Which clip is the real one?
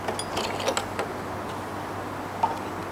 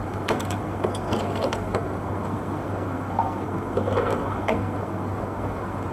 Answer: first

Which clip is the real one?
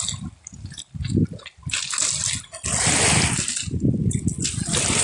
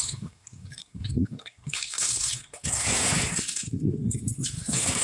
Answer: first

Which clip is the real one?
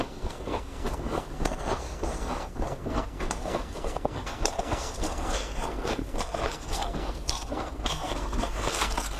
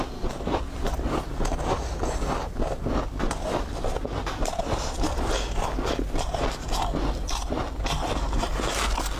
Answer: second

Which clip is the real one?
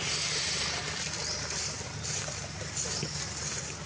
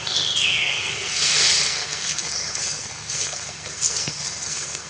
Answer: first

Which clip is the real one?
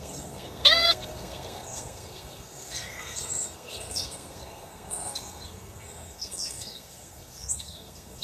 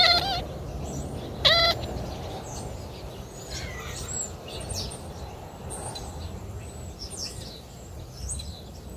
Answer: second